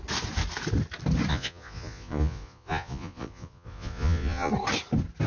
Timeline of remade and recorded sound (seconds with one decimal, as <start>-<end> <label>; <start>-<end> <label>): 0.0-1.3 recorded; 1.3-4.5 remade; 4.5-5.3 recorded